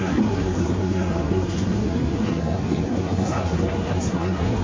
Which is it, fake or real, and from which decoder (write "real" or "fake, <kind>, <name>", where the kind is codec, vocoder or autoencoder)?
fake, codec, SNAC